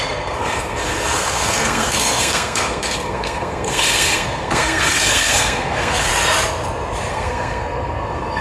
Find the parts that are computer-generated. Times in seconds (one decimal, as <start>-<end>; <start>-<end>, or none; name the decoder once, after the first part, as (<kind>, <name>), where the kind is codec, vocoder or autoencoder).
0.0-6.1 (codec, SNAC); 7.1-8.4